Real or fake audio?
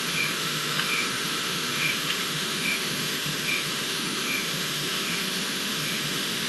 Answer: fake